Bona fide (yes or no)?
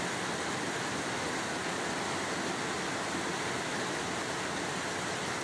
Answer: yes